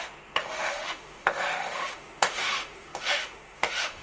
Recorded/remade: remade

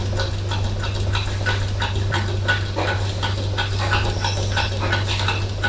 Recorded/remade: recorded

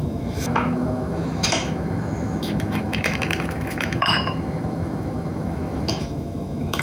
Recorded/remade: remade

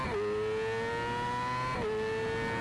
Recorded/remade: recorded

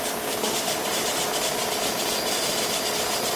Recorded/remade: recorded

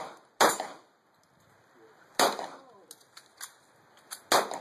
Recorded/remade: recorded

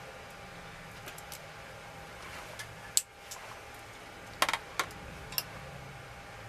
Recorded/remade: recorded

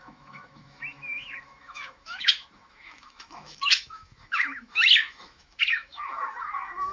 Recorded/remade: remade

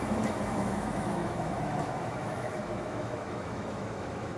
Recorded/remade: remade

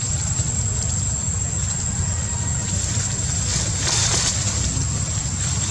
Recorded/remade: recorded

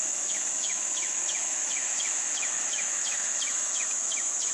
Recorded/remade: remade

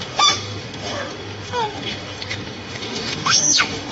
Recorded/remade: remade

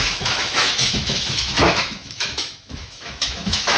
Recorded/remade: remade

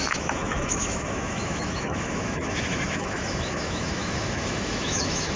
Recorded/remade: remade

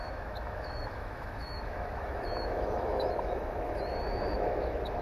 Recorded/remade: remade